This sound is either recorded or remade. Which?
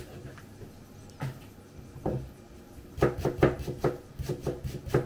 recorded